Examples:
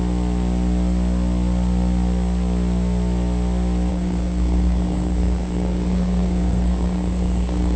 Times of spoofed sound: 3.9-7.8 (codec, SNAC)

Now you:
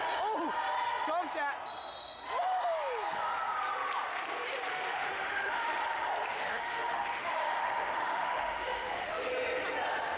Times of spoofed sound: 4.7-5.8 (autoencoder, DAC-VAE); 6.3-9.3